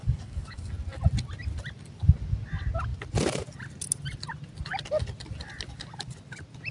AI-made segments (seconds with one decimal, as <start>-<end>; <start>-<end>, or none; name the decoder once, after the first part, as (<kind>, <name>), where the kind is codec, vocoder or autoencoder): 0.0-0.7 (codec, DAC)